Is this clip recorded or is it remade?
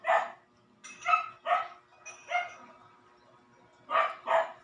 recorded